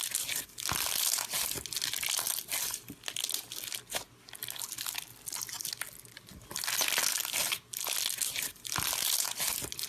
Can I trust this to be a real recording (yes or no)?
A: yes